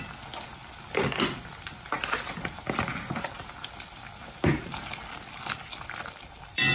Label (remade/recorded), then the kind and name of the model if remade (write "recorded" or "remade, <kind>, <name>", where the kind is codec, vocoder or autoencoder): recorded